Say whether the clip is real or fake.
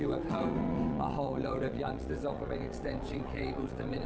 fake